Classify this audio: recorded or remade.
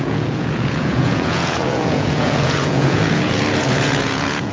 remade